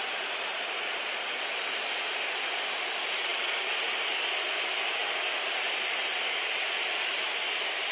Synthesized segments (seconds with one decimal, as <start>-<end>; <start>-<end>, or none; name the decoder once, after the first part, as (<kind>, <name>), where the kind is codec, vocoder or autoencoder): none